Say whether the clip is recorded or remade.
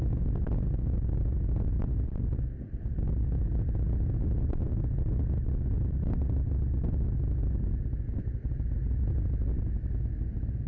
recorded